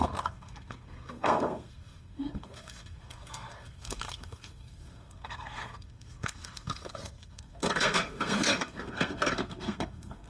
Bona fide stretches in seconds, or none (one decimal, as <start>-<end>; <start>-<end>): none